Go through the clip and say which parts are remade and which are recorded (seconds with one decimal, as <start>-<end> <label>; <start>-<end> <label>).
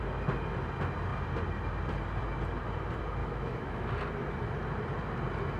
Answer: 0.0-3.2 recorded; 3.2-3.9 remade; 3.9-5.6 recorded